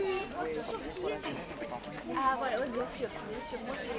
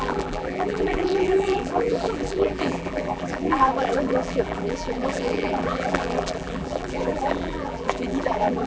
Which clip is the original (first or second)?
first